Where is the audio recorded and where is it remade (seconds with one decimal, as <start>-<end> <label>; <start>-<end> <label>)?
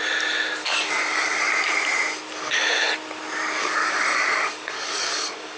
0.0-0.6 recorded; 0.6-1.5 remade; 1.5-3.6 recorded; 3.6-5.6 remade